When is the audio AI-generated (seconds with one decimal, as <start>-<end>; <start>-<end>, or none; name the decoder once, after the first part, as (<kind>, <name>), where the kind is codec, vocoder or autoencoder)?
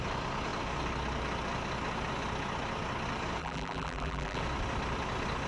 3.4-4.4 (vocoder, BigVGAN v2)